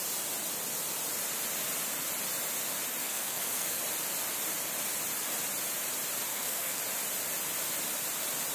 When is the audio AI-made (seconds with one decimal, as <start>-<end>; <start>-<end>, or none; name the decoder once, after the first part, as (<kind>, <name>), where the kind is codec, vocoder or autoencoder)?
3.0-3.8 (codec, SNAC); 6.3-6.8